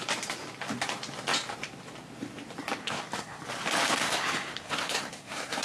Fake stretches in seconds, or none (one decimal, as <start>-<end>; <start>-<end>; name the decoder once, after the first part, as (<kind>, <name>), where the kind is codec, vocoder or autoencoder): 2.8-3.4 (codec, SNAC); 4.0-5.6